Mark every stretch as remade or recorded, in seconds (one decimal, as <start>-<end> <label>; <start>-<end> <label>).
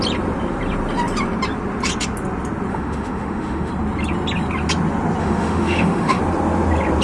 0.0-2.7 recorded; 2.7-3.7 remade; 3.7-5.2 recorded; 5.2-6.2 remade; 6.2-7.0 recorded